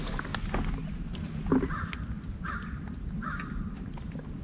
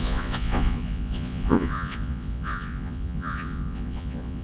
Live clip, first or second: first